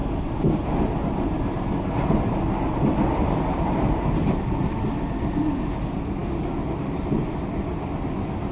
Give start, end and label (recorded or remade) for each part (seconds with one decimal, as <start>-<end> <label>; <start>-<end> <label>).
0.0-8.5 recorded